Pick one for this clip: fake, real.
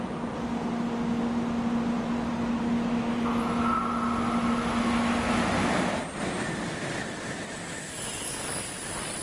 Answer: real